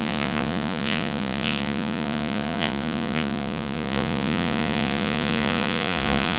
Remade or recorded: remade